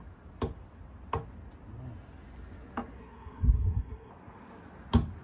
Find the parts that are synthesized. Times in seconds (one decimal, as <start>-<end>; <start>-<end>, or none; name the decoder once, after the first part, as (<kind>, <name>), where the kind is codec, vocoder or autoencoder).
3.0-4.1 (codec, SNAC)